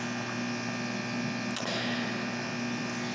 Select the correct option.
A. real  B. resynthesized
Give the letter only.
A